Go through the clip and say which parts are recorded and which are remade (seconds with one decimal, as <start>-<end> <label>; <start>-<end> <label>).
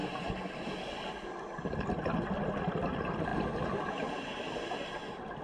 0.0-5.4 recorded